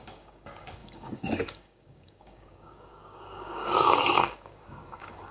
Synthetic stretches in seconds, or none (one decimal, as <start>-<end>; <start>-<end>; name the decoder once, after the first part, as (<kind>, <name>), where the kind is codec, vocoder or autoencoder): 0.0-5.3 (codec, DAC)